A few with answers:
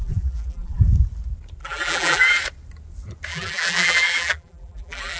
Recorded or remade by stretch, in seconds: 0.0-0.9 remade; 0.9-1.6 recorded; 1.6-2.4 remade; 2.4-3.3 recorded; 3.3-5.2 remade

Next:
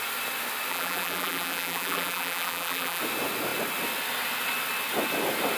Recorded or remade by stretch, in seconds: 0.0-0.7 recorded; 0.7-3.0 remade; 3.0-5.6 recorded

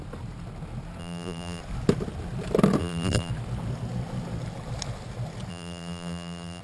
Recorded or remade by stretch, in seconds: 0.0-1.0 recorded; 1.0-1.6 remade; 1.6-2.8 recorded; 2.8-3.3 remade; 3.3-5.5 recorded; 5.5-6.6 remade

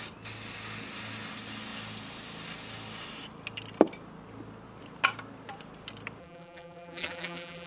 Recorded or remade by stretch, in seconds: 0.0-6.2 recorded; 6.2-7.7 remade

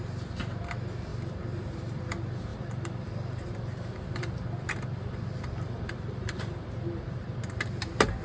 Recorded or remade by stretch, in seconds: 0.0-1.1 recorded; 1.1-2.0 remade; 2.0-2.5 recorded; 2.5-7.4 remade; 7.4-8.2 recorded

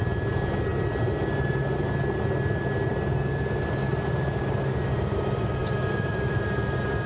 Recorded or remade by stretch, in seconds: 0.0-5.6 recorded; 5.6-6.4 remade; 6.4-7.1 recorded

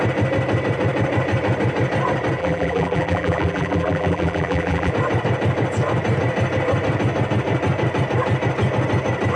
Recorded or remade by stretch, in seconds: 0.0-2.4 recorded; 2.4-4.9 remade; 4.9-9.4 recorded